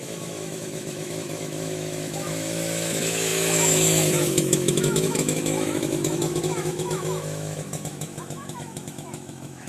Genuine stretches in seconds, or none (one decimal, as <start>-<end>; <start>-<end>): none